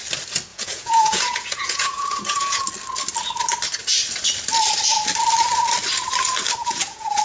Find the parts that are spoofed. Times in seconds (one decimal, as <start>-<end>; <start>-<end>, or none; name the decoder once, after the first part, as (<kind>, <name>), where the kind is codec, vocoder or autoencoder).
0.5-2.6 (vocoder, Vocos); 6.6-7.2